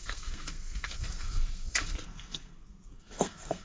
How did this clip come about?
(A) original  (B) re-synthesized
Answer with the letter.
B